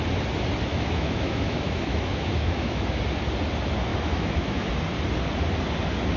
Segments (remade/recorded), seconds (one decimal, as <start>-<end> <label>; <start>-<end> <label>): 0.0-0.7 recorded; 0.7-3.0 remade; 3.0-3.9 recorded; 3.9-4.7 remade; 4.7-6.2 recorded